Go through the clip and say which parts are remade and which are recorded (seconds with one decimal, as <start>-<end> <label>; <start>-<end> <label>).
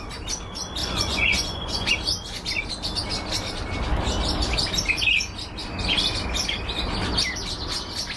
0.0-0.8 recorded; 0.8-1.9 remade; 1.9-8.2 recorded